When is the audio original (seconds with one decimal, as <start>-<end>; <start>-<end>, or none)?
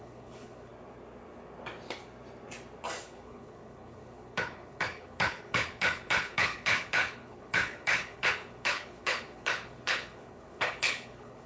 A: 0.7-3.0